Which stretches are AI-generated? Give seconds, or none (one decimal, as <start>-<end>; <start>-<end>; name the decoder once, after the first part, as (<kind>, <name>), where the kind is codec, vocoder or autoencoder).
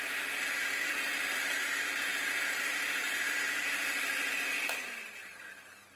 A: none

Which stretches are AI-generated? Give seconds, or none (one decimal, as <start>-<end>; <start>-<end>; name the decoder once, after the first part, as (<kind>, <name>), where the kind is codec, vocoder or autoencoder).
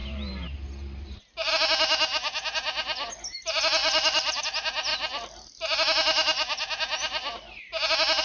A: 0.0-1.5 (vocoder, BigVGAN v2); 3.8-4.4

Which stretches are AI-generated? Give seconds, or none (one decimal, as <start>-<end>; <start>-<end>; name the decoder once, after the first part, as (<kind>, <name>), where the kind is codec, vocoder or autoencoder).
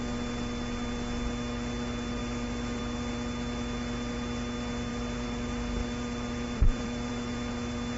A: 2.2-2.8 (vocoder, BigVGAN v2); 4.9-7.1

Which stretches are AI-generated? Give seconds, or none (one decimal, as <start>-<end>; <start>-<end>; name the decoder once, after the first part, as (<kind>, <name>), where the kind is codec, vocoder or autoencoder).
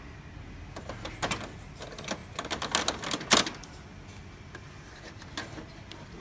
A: none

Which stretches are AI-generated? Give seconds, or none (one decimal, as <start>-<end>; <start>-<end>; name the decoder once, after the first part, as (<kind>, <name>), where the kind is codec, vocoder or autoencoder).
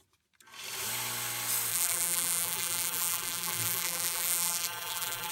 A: 1.7-5.3 (vocoder, BigVGAN v2)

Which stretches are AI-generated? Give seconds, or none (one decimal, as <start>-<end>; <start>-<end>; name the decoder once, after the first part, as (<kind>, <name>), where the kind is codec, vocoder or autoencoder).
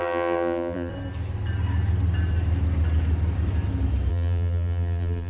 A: 0.0-0.9 (vocoder, BigVGAN v2); 4.1-5.3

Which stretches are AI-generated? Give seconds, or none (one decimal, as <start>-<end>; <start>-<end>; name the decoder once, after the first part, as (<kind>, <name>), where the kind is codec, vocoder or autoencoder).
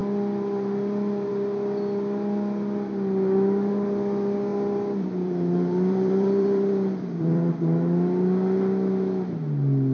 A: 4.5-7.5 (vocoder, BigVGAN v2)